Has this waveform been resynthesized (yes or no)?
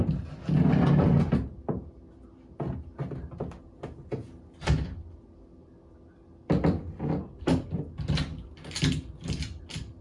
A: no